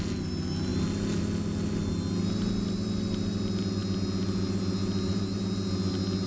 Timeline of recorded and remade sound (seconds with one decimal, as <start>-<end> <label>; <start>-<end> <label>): 0.0-6.3 recorded

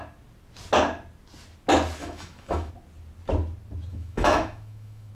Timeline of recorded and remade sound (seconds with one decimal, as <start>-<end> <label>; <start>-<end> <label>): 0.0-2.0 recorded; 2.0-2.7 remade; 2.7-3.9 recorded; 3.9-5.1 remade

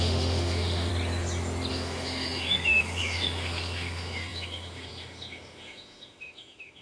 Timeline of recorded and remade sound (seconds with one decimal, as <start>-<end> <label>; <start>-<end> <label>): 0.0-0.9 remade; 0.9-1.7 recorded; 1.7-6.8 remade

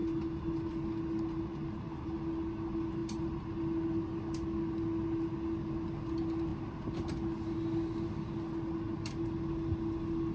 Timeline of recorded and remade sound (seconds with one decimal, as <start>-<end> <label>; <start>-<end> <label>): 0.0-10.3 recorded

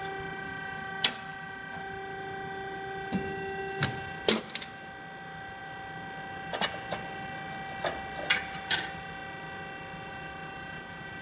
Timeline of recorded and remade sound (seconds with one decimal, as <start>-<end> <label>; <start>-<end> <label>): 0.0-11.2 recorded

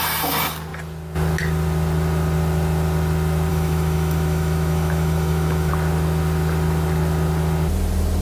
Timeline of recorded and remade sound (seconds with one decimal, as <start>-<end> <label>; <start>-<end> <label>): 0.0-3.5 recorded; 3.5-5.7 remade; 5.7-8.2 recorded

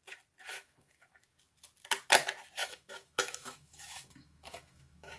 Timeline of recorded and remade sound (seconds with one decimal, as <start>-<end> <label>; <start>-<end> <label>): 0.0-0.5 recorded; 0.5-1.1 remade; 1.1-2.6 recorded; 2.6-5.2 remade